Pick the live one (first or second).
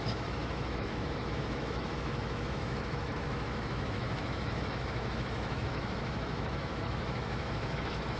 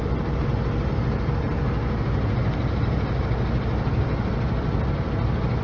second